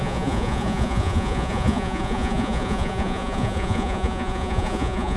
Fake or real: fake